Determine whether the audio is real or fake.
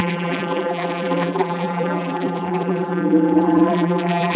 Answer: fake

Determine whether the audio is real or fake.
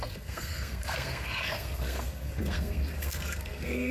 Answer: fake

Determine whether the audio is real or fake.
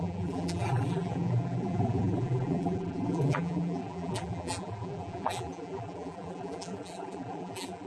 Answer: fake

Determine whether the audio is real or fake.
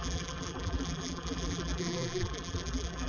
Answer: fake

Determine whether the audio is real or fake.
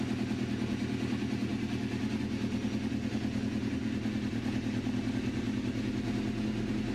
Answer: real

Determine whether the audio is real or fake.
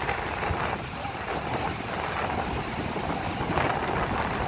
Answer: real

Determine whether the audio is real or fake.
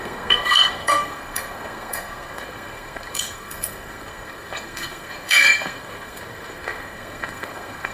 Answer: fake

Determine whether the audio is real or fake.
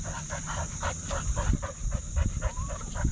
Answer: real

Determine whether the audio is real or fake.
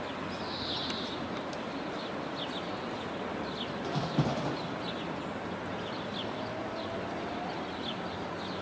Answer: real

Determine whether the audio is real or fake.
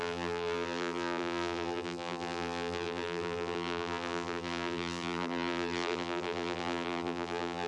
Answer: fake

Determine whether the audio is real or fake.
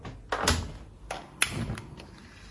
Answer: real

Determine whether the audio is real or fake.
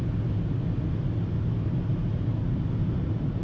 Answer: real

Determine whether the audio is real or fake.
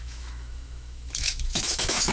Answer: fake